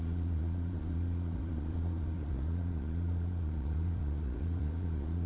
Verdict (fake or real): fake